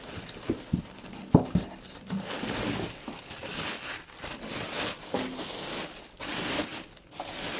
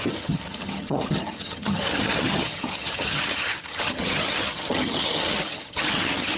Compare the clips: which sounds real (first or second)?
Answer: first